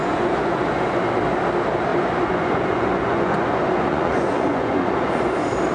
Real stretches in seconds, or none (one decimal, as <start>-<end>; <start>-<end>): 1.0-1.9; 5.3-5.7